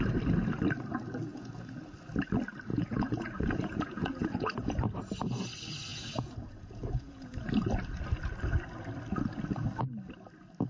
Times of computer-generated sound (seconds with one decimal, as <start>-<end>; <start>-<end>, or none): 1.3-1.8; 2.7-4.9; 5.9-7.4